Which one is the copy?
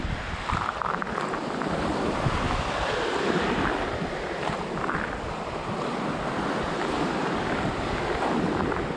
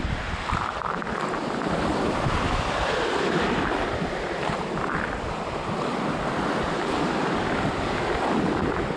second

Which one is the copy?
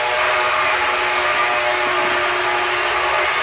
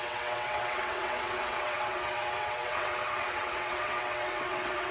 second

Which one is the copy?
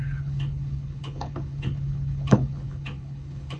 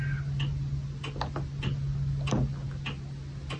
first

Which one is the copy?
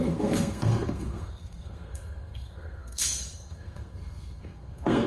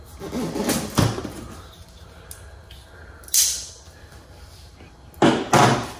first